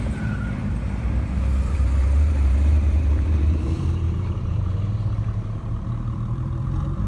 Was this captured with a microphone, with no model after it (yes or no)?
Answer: no